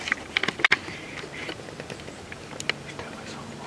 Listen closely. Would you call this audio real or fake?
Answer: real